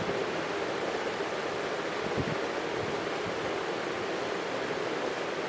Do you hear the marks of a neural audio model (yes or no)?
no